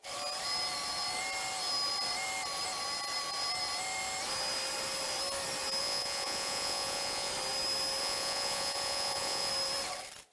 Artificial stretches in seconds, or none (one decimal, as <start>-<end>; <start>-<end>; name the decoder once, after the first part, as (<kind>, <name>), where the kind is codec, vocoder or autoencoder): 5.8-7.3 (vocoder, Vocos); 8.0-9.5